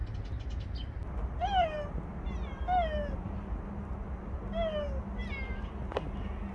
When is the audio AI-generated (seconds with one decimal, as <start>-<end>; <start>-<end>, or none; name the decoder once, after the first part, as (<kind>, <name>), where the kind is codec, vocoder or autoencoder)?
none